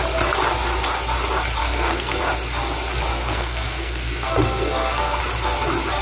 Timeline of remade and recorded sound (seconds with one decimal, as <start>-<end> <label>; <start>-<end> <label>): 0.0-1.6 recorded; 1.6-2.2 remade; 2.2-3.1 recorded; 3.1-5.2 remade; 5.2-6.0 recorded